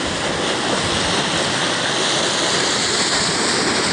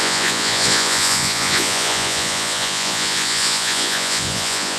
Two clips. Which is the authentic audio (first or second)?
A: first